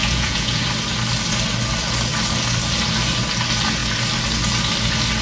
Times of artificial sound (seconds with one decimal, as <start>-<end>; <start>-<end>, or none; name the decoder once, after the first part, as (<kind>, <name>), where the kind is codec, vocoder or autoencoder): 0.0-0.6 (vocoder, Vocos)